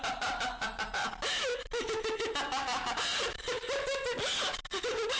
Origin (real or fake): real